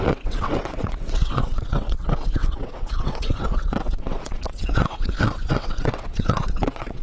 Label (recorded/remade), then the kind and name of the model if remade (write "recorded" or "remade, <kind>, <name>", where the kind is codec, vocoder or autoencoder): remade, vocoder, WaveNeXt